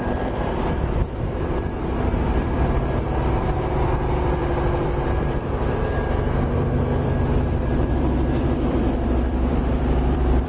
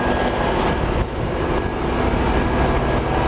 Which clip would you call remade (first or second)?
first